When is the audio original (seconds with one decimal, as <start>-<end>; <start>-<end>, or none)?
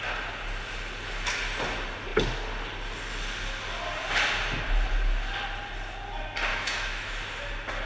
0.0-6.5; 7.1-7.9